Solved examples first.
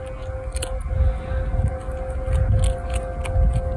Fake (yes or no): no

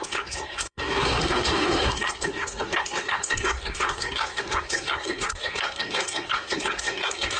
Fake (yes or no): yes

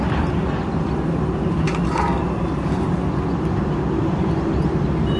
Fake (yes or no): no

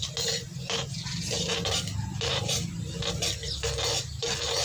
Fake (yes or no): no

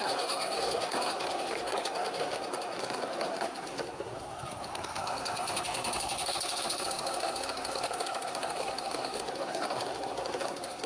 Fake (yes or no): yes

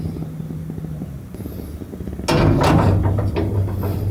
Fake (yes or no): no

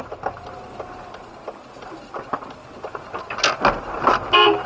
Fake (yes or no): no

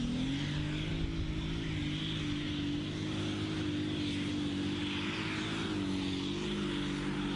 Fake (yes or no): no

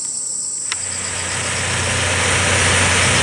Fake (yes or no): no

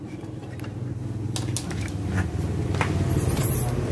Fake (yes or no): no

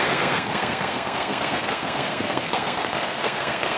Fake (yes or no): yes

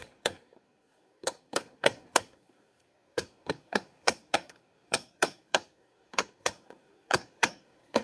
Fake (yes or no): yes